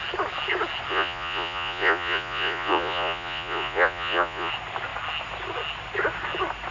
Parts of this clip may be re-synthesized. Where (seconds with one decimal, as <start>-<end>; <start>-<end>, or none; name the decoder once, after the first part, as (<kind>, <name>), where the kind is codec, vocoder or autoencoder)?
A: 0.9-4.5 (vocoder, Vocos)

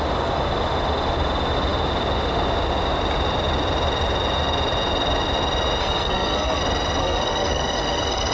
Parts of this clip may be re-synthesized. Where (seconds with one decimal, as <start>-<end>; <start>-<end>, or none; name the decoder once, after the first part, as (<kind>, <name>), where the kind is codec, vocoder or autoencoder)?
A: 5.8-6.6 (codec, SNAC); 7.0-8.3